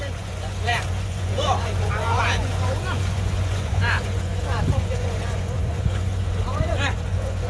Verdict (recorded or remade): remade